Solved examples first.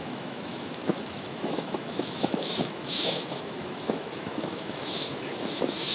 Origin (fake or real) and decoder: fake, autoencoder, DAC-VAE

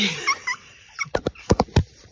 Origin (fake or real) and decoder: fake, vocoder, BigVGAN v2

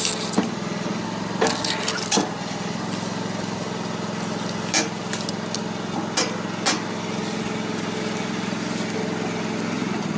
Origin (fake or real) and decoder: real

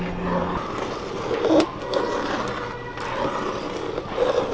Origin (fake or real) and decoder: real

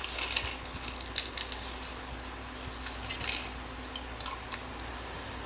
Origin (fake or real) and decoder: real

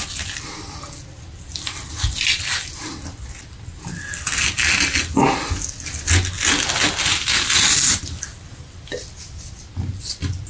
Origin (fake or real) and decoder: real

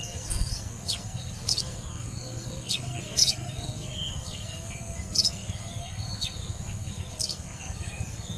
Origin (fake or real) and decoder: fake, codec, SNAC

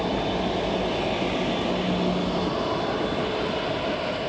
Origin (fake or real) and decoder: real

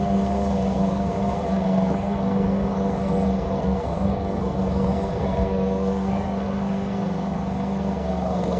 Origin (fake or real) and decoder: fake, codec, SNAC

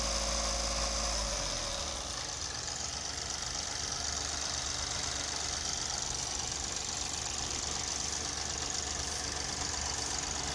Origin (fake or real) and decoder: real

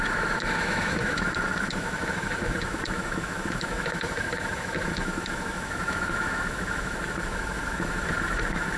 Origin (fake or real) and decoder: fake, autoencoder, DAC-VAE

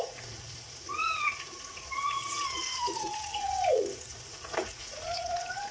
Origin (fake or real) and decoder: fake, vocoder, Vocos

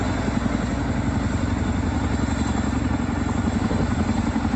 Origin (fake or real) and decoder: real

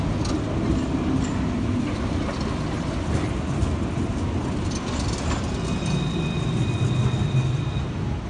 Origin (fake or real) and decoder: real